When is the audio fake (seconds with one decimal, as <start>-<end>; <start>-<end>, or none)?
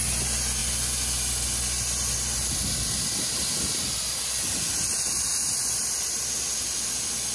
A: none